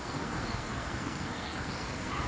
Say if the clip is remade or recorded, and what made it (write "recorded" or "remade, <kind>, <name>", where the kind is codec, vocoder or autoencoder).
remade, codec, SNAC